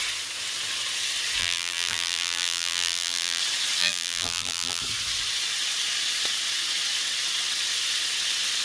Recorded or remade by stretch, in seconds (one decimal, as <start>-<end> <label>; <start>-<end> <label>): 0.0-1.4 recorded; 1.4-3.4 remade; 3.4-3.8 recorded; 3.8-4.8 remade; 4.8-8.6 recorded